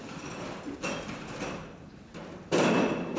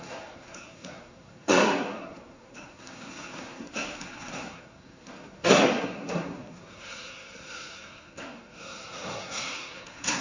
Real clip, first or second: first